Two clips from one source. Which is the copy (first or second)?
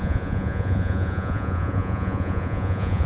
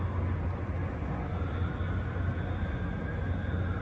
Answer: first